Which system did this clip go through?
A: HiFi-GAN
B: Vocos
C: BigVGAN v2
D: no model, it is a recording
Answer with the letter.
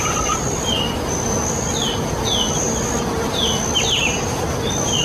D